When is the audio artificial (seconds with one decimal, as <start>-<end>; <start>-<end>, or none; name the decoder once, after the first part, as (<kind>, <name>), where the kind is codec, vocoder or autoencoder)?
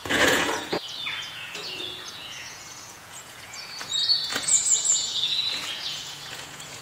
0.0-6.8 (vocoder, Vocos)